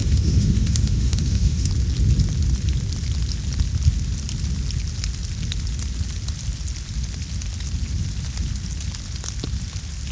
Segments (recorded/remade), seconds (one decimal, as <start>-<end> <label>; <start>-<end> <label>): 0.0-1.7 remade; 1.7-10.1 recorded